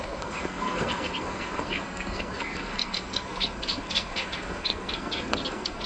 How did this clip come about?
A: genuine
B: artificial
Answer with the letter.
B